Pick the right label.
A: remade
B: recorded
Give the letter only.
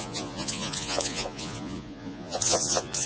A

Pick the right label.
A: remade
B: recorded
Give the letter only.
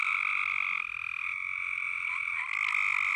B